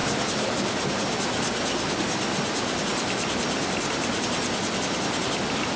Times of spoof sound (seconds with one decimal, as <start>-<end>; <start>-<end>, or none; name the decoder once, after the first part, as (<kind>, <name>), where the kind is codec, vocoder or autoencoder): none